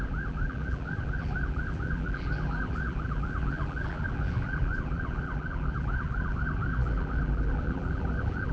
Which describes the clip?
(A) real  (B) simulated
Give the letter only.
B